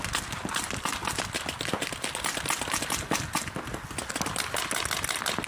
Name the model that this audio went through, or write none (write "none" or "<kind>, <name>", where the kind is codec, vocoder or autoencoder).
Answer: none